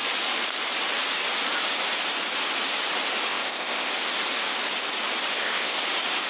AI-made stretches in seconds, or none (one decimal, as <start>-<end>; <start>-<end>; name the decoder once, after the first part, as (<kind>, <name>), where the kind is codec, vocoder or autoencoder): 3.3-3.9 (codec, ZipCodec); 5.3-5.8